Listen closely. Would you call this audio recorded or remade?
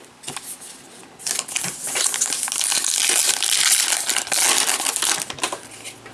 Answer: recorded